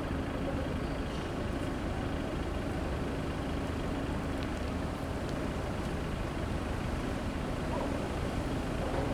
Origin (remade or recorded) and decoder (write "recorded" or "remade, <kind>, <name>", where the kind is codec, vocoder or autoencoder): remade, vocoder, BigVGAN v2